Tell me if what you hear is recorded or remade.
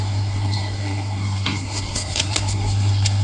remade